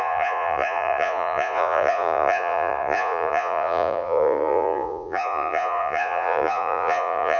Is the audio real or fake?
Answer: fake